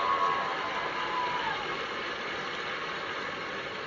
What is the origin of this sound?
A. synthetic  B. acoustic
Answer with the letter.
B